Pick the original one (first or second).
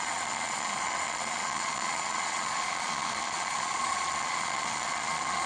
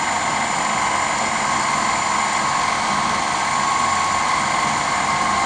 second